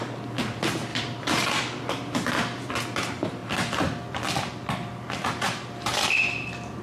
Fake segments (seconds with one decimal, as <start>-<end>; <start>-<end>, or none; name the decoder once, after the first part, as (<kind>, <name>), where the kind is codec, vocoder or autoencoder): 0.9-1.5 (vocoder, BigVGAN v2)